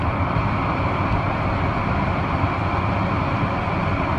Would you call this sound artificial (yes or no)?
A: yes